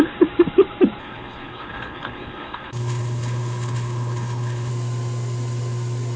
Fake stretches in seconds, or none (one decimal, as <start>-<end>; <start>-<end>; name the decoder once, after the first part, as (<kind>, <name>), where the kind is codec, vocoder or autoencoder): 1.0-4.7 (codec, HILCodec)